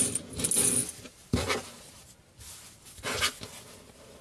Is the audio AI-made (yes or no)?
no